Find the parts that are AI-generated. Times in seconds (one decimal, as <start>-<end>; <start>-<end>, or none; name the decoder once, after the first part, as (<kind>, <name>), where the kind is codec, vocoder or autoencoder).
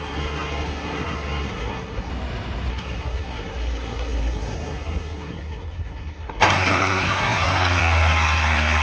0.0-2.1 (codec, SNAC); 2.7-8.8